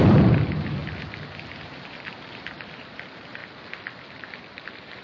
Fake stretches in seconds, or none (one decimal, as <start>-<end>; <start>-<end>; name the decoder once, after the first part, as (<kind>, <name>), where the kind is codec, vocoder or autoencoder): 0.0-0.8 (vocoder, BigVGAN v2); 1.5-3.4; 4.0-5.0